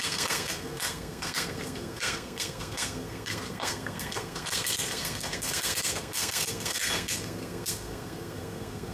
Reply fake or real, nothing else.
fake